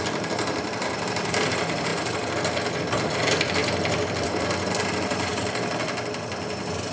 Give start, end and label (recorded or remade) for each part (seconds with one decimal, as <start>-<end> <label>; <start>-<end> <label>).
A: 0.0-1.9 remade; 1.9-2.8 recorded; 2.8-5.3 remade; 5.3-6.9 recorded